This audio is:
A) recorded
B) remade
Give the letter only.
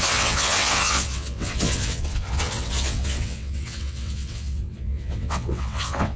B